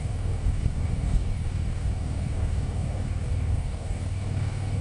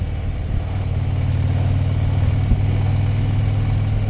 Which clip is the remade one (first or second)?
first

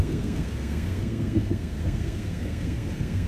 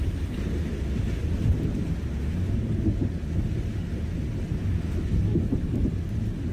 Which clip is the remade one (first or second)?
first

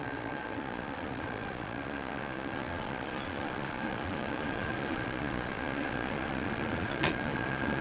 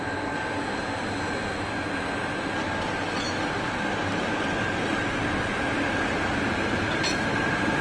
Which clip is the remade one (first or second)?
first